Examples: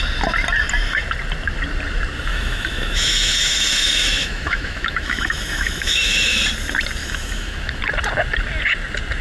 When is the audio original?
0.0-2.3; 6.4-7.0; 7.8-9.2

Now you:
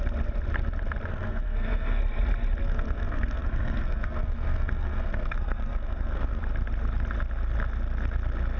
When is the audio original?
0.0-1.1; 2.0-2.6; 6.4-8.6